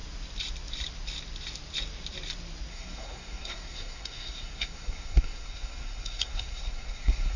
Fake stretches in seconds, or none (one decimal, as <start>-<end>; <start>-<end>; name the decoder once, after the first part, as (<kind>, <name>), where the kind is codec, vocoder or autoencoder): 2.7-7.4 (codec, SNAC)